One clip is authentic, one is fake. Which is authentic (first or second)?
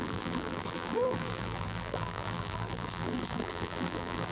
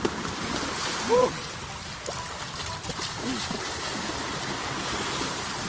second